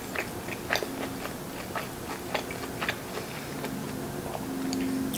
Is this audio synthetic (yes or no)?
no